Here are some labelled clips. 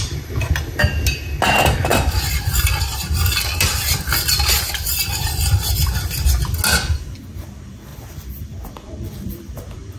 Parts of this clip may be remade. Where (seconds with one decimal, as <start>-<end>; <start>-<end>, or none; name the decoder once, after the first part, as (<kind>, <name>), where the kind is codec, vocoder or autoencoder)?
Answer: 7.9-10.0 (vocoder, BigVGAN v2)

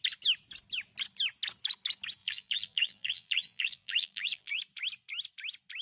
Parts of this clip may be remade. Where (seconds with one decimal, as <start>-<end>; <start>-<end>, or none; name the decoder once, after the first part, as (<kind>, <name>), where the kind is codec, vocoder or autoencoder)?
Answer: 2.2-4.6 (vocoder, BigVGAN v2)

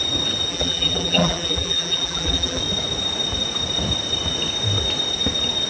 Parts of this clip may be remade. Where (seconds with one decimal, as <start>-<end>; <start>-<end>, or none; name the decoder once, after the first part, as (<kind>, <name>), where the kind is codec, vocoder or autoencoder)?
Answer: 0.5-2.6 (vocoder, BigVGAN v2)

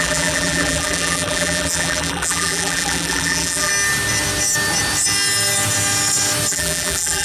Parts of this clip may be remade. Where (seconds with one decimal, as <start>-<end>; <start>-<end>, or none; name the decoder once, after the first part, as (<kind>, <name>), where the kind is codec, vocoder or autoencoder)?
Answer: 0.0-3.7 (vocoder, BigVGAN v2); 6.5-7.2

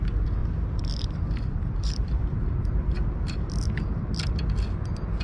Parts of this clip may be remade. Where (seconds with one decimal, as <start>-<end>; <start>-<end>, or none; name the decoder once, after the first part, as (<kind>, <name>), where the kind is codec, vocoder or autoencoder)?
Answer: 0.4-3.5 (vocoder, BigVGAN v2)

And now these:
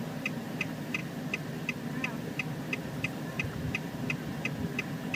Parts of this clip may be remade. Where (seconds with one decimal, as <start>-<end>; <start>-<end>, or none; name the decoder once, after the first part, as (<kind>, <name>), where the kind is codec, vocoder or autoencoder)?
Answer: none

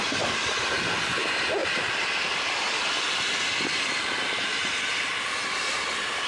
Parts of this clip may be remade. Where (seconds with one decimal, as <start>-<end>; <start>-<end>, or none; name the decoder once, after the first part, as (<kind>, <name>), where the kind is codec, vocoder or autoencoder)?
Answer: 1.6-4.6 (vocoder, BigVGAN v2)

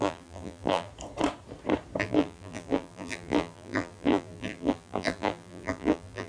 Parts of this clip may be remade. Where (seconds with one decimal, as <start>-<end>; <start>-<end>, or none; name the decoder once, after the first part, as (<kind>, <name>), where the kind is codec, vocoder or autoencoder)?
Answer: 0.0-0.9 (vocoder, BigVGAN v2); 2.0-6.3